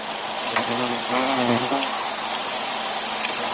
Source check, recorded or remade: recorded